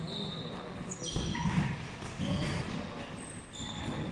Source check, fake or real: real